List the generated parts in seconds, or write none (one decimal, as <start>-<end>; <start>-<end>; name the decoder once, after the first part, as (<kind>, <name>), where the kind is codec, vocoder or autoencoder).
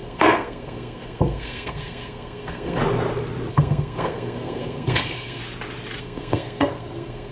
0.0-2.8 (codec, SNAC); 3.5-5.4; 6.0-7.3